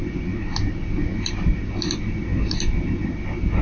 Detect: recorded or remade recorded